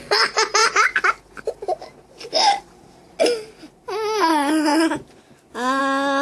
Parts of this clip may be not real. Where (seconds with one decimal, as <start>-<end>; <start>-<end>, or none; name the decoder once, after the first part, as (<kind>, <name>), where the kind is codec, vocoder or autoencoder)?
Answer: none